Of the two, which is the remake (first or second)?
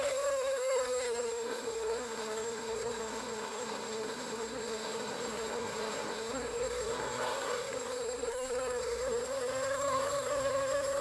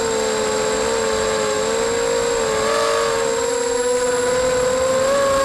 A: first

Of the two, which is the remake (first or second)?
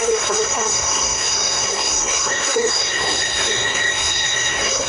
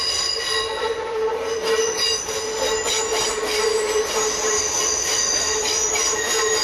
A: first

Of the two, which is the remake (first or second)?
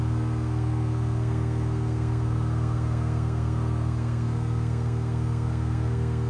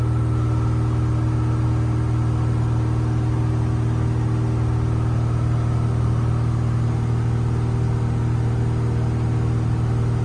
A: first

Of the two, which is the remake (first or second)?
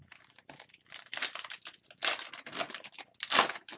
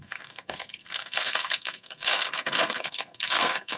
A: second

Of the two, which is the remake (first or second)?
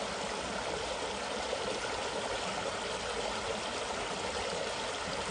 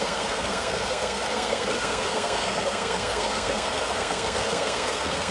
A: second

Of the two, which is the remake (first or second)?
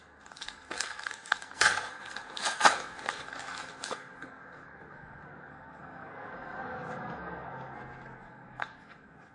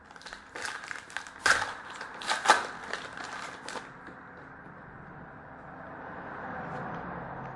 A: first